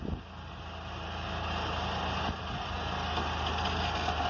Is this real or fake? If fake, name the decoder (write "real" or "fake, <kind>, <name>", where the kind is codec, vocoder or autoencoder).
real